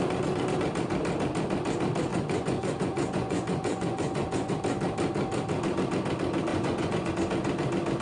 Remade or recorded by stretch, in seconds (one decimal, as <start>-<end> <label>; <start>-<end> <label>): 0.0-2.1 recorded; 2.1-4.5 remade; 4.5-6.5 recorded; 6.5-7.1 remade; 7.1-8.0 recorded